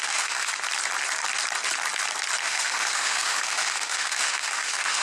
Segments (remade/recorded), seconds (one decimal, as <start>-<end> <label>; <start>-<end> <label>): 0.0-0.5 remade; 0.5-2.4 recorded; 2.4-5.0 remade